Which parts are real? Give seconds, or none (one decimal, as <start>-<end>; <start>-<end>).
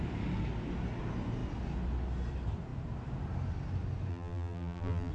0.0-4.1